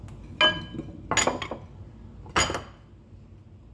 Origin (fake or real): real